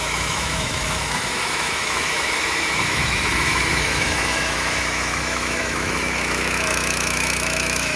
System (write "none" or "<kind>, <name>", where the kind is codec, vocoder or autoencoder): autoencoder, DAC-VAE